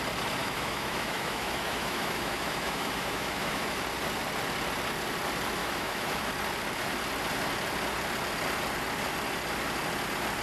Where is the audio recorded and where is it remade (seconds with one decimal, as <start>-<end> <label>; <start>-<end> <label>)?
0.0-0.4 recorded; 0.4-3.8 remade; 3.8-5.6 recorded; 5.6-6.3 remade; 6.3-10.4 recorded